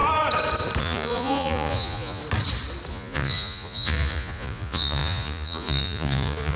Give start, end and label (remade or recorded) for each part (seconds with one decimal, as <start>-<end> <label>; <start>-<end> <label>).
0.0-0.8 recorded; 0.8-2.2 remade; 2.2-2.9 recorded; 2.9-6.6 remade